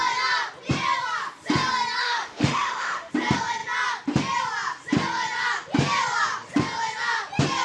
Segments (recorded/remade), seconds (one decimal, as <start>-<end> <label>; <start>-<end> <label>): 0.0-2.0 recorded; 2.0-3.1 remade; 3.1-7.6 recorded